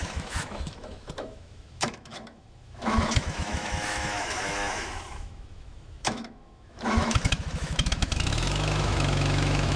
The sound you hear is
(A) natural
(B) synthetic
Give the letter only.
B